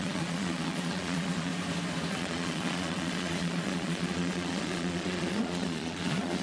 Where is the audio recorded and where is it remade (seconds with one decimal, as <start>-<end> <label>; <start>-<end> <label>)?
0.0-1.5 remade; 1.5-2.1 recorded; 2.1-6.4 remade